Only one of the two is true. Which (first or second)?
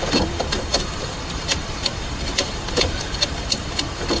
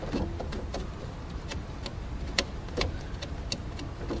second